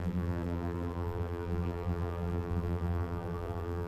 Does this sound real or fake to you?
fake